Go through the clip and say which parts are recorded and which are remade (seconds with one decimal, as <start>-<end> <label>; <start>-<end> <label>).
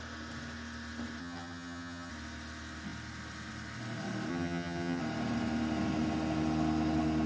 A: 0.0-1.2 recorded; 1.2-2.1 remade; 2.1-4.3 recorded; 4.3-5.0 remade; 5.0-7.3 recorded